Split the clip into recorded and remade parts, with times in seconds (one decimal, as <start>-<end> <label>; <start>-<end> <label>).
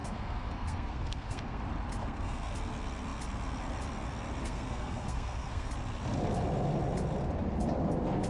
0.0-1.6 remade; 1.6-2.0 recorded; 2.0-2.5 remade; 2.5-4.4 recorded; 4.4-5.7 remade; 5.7-8.3 recorded